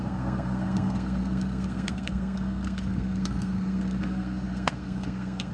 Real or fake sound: fake